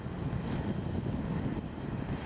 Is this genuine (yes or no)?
yes